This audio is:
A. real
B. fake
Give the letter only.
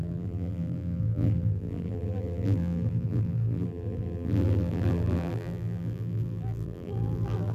B